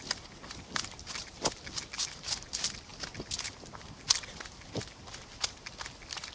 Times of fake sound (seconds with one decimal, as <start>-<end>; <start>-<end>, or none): none